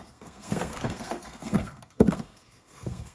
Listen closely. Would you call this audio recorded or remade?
remade